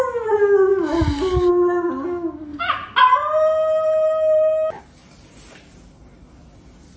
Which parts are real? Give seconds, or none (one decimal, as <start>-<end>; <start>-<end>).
0.0-7.0